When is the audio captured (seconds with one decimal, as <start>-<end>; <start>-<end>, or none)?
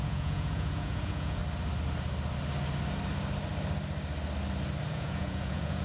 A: 1.4-4.9